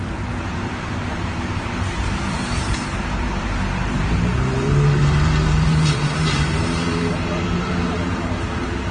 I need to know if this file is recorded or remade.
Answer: remade